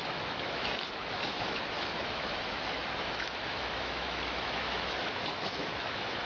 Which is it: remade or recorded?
remade